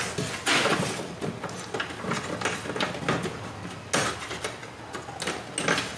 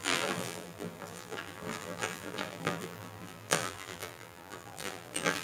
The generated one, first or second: second